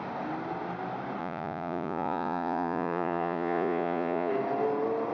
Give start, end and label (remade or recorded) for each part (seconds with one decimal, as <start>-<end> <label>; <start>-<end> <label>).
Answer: 0.0-1.2 recorded; 1.2-4.3 remade; 4.3-5.1 recorded